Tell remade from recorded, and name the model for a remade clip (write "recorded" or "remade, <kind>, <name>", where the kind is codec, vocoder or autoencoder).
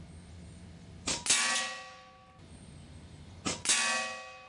recorded